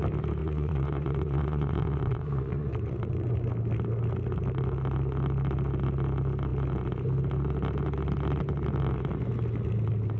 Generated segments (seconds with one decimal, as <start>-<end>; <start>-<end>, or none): 0.4-3.5